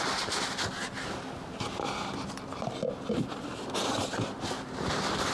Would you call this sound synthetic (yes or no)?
no